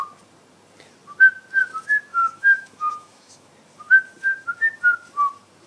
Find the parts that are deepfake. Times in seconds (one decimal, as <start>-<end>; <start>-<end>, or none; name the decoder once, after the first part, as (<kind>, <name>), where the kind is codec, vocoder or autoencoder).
2.1-3.5 (autoencoder, DAC-VAE)